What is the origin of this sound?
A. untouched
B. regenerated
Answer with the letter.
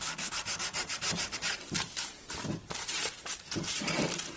B